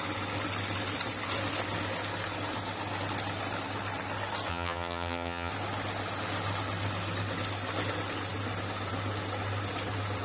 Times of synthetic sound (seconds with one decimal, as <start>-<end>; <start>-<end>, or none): 4.5-5.5